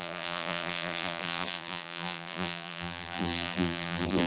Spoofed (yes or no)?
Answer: yes